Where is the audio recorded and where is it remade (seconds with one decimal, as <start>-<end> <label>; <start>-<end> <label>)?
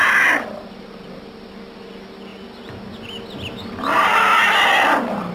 0.0-5.3 recorded